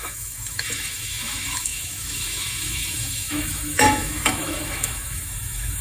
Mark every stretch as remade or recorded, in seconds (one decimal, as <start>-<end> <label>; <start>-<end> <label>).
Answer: 0.0-5.8 remade

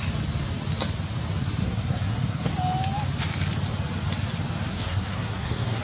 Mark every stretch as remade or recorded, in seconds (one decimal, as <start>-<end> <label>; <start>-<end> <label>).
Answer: 0.0-1.6 recorded; 1.6-2.5 remade; 2.5-4.7 recorded; 4.7-5.8 remade

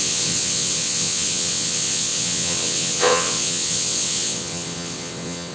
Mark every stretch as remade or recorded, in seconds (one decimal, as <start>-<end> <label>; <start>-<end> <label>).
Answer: 0.0-5.5 remade